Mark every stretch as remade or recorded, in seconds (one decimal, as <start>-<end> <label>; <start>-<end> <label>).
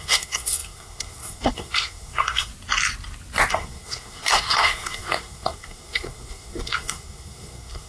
0.0-2.5 remade; 2.5-3.5 recorded; 3.5-7.9 remade